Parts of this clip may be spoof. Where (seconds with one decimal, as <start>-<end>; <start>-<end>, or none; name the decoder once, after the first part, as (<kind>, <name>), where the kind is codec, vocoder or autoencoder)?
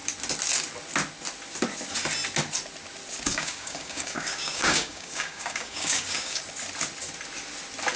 3.3-6.4 (codec, DAC)